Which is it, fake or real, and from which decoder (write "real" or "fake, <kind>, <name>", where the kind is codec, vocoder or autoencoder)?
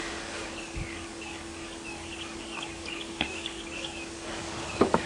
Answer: fake, codec, DAC